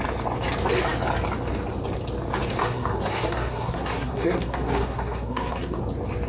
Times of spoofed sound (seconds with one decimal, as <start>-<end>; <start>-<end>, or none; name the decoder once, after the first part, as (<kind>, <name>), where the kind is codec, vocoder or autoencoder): 2.6-5.8 (codec, SNAC)